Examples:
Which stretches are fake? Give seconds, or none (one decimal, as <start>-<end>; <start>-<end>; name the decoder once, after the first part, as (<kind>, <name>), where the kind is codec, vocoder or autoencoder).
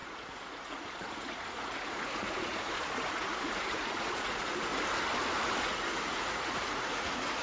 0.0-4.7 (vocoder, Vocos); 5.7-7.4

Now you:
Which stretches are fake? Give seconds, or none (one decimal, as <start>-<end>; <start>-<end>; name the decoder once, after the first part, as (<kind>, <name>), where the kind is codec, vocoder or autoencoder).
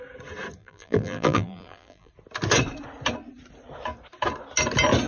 0.6-2.1 (vocoder, BigVGAN v2)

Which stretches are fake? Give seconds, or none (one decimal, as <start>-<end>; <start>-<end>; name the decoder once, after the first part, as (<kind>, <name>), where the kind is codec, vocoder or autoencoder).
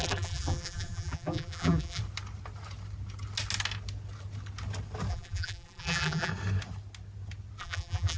0.0-2.0 (vocoder, BigVGAN v2); 5.1-6.3; 7.6-8.2